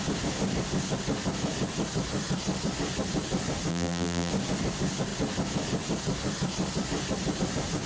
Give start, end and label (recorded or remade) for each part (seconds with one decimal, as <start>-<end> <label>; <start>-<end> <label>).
0.0-3.7 recorded; 3.7-4.3 remade; 4.3-7.9 recorded